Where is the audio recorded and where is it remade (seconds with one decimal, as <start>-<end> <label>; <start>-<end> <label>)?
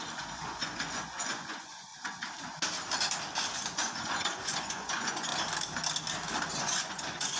0.0-1.9 remade; 1.9-3.5 recorded; 3.5-5.3 remade; 5.3-6.6 recorded; 6.6-7.4 remade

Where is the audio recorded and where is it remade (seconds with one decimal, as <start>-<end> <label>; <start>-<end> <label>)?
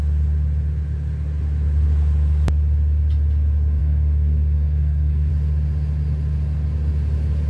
0.0-3.8 recorded; 3.8-5.3 remade; 5.3-7.5 recorded